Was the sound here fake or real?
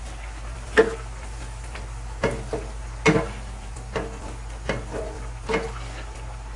real